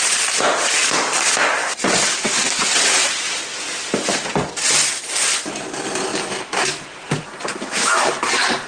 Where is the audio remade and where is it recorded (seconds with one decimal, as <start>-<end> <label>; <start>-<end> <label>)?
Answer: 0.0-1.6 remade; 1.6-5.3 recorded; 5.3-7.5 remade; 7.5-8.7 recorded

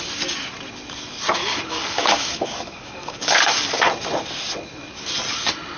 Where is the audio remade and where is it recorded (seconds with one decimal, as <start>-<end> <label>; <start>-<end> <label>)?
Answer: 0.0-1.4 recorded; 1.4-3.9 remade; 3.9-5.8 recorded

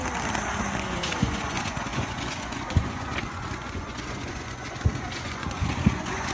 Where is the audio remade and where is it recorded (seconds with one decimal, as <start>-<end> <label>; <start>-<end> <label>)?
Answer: 0.0-0.8 recorded; 0.8-6.3 remade